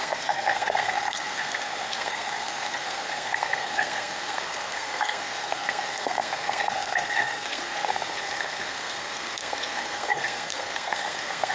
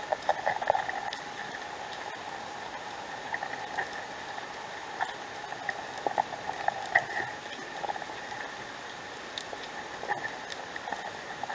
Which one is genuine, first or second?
second